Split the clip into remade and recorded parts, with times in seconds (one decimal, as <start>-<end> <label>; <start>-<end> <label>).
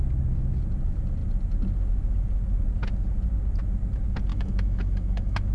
0.0-4.3 recorded; 4.3-5.5 remade